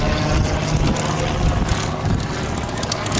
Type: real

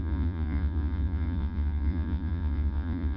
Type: fake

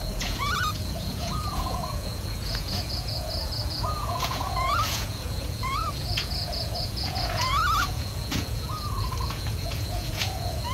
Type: fake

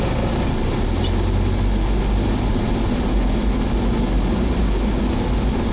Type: real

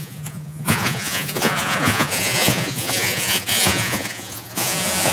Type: fake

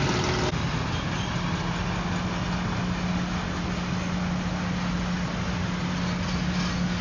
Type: real